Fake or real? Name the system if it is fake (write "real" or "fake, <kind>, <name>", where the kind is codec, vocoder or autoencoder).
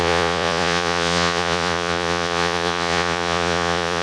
fake, vocoder, Vocos